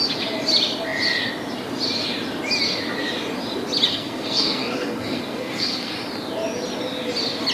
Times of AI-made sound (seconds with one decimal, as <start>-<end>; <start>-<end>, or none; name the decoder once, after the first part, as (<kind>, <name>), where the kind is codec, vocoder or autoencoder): 3.9-5.9 (codec, SNAC)